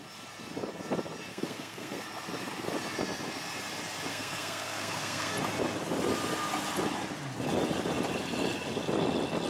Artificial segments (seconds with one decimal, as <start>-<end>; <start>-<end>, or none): 1.3-2.0; 4.1-5.3